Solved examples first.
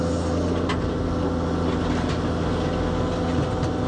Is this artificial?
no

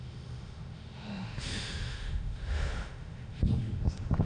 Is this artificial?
yes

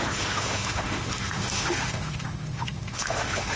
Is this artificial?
yes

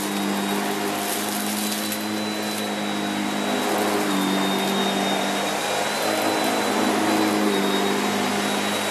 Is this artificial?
no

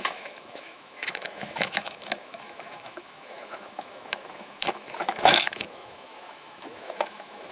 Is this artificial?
yes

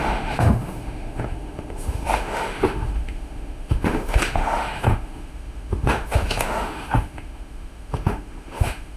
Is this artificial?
yes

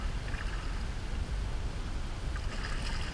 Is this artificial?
no